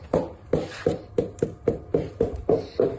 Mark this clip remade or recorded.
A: recorded